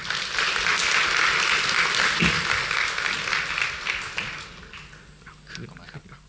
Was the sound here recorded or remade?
recorded